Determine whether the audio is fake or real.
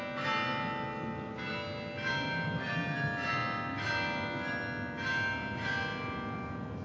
real